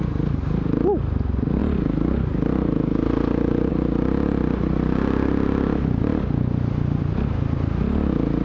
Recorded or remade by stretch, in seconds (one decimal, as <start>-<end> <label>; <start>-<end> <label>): 0.0-6.1 recorded; 6.1-7.3 remade; 7.3-8.4 recorded